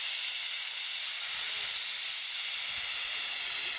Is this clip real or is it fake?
real